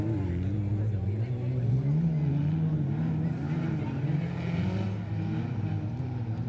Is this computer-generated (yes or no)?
no